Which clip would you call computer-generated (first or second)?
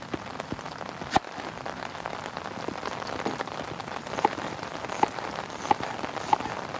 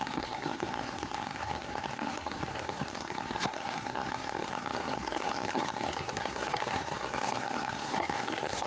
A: second